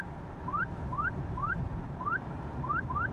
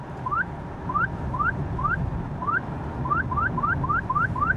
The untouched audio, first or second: second